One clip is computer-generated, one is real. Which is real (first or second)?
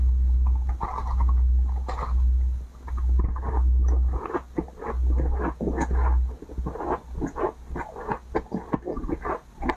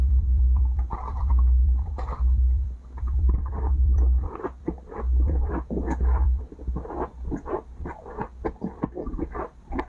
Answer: first